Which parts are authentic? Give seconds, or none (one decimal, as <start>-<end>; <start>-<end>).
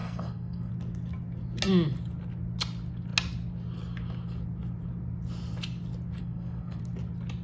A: 0.7-6.2; 6.8-7.4